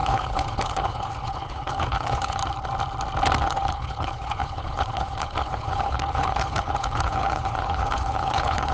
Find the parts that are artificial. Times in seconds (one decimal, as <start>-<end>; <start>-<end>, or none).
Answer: 0.0-2.4; 3.4-8.7